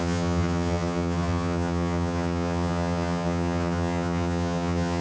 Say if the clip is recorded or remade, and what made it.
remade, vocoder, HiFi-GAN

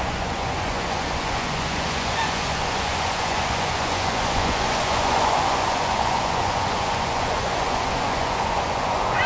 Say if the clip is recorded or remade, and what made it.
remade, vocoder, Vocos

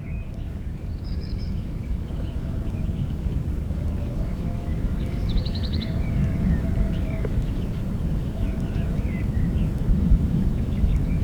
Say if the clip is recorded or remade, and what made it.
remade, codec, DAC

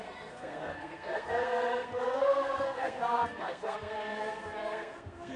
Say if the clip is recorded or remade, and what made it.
remade, codec, SNAC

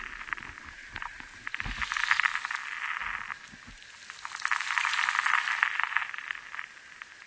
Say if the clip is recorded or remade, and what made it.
recorded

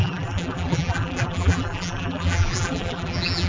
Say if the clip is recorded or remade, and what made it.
remade, vocoder, BigVGAN v2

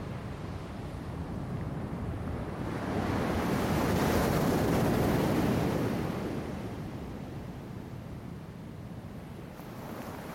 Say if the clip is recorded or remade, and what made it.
remade, vocoder, BigVGAN v2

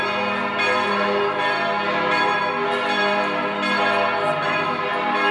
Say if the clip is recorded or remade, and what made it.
recorded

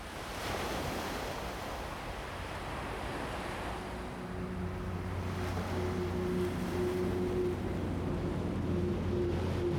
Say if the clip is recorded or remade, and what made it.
recorded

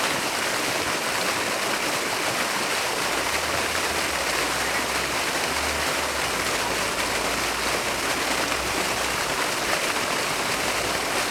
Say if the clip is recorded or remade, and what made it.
recorded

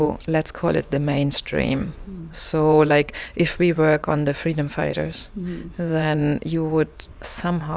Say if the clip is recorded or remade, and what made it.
remade, vocoder, Vocos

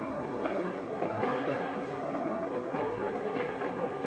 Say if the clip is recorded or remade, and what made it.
remade, codec, SNAC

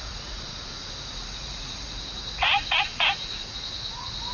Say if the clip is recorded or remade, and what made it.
remade, vocoder, Vocos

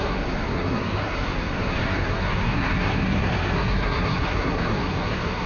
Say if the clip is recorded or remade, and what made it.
remade, codec, SNAC